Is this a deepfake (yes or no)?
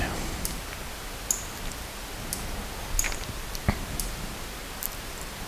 no